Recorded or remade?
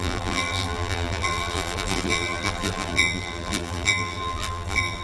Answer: remade